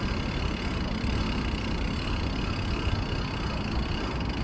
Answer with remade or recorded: recorded